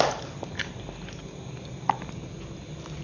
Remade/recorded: recorded